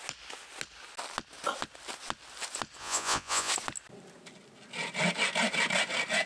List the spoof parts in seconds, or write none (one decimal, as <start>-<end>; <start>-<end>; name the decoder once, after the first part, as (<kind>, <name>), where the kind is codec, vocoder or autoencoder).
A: 2.8-3.5 (vocoder, Vocos)